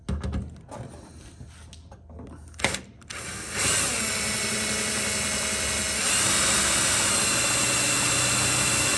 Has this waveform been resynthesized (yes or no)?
no